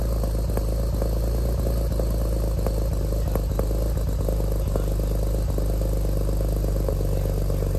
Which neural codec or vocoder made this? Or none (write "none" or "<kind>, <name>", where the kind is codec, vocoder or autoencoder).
none